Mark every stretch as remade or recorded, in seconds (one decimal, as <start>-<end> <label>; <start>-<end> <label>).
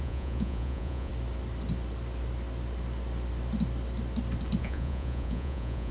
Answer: 0.0-1.1 remade; 1.1-4.6 recorded; 4.6-5.9 remade